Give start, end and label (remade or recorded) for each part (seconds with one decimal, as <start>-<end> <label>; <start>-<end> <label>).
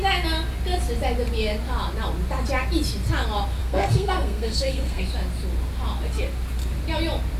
0.0-3.6 recorded; 3.6-5.0 remade; 5.0-7.4 recorded